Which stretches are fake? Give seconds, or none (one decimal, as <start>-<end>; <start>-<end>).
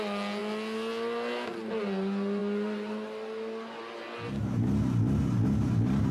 none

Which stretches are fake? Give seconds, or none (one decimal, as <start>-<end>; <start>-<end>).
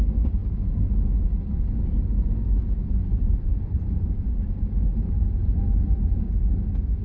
3.0-5.6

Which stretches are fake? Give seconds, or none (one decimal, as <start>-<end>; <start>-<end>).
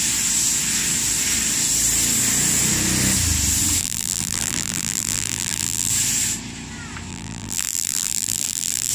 3.8-5.9; 7.1-8.9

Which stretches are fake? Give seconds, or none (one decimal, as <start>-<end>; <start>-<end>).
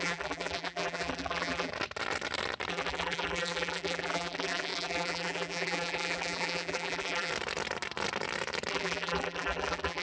0.0-1.7; 2.7-7.3; 8.7-10.0